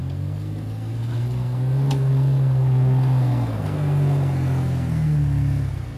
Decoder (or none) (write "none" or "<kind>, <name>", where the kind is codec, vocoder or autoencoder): codec, SNAC